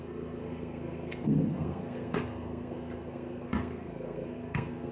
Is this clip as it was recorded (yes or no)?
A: no